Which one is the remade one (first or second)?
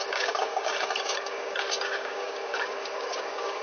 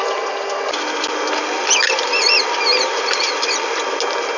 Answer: first